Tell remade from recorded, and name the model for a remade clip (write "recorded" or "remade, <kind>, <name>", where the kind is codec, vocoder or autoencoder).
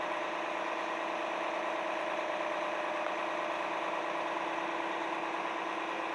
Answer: recorded